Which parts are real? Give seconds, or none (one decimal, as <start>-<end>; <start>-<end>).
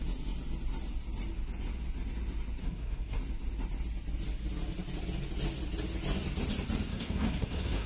0.0-2.6; 3.2-6.9